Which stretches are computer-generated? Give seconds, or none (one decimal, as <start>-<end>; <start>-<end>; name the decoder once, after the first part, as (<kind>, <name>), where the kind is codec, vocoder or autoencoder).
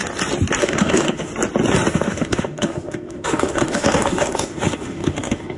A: 0.6-1.3 (autoencoder, DAC-VAE); 1.9-5.6